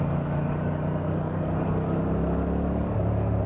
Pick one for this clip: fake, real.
fake